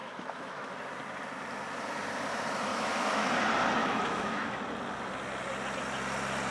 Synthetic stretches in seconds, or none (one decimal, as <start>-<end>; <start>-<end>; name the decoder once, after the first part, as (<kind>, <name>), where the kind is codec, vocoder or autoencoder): 0.0-0.7 (autoencoder, DAC-VAE); 2.7-3.3; 3.8-4.6